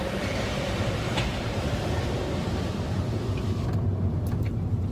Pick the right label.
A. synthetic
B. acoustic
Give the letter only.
A